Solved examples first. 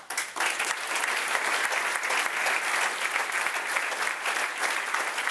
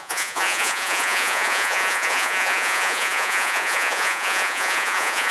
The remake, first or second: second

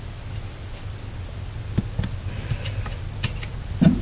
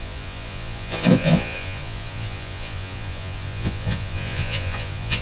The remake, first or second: second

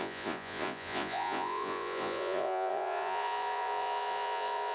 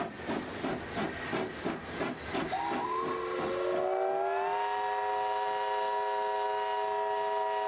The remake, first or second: first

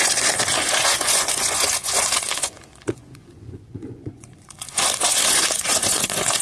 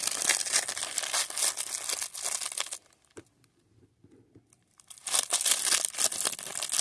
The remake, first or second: first